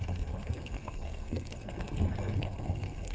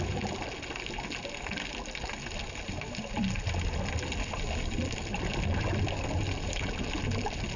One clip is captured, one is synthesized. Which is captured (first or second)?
second